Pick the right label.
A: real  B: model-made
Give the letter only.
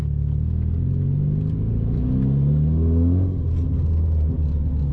A